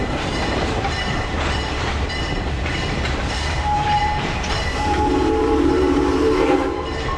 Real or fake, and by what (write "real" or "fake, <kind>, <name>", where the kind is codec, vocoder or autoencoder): fake, vocoder, BigVGAN v2